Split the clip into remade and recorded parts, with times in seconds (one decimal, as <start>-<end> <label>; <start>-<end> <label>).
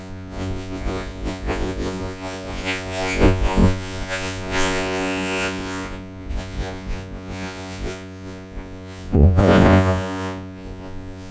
0.0-11.3 remade